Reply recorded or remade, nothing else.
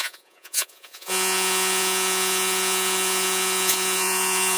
remade